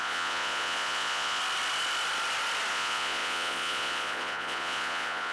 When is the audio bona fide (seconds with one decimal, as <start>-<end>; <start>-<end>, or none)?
1.4-2.7